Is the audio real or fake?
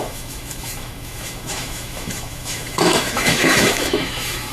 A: fake